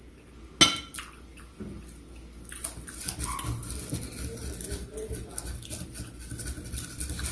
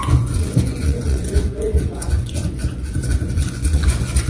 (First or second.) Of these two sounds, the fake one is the second